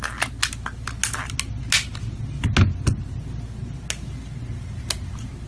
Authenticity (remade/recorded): recorded